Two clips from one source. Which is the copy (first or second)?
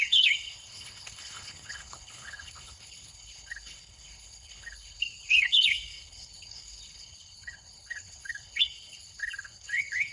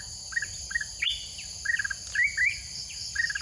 first